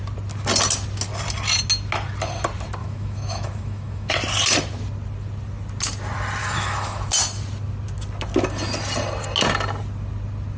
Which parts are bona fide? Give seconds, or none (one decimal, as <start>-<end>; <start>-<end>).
0.0-2.8; 4.1-6.4; 7.1-10.6